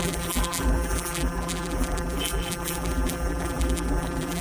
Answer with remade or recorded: remade